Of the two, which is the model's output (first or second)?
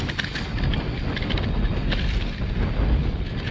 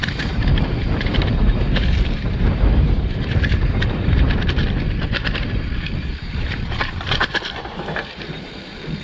second